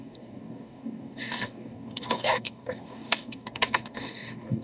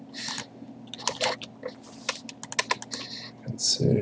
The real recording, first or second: second